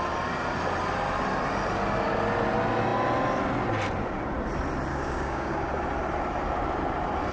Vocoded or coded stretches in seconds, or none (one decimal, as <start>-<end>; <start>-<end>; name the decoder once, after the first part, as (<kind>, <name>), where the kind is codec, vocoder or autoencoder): 4.9-5.7 (codec, DAC)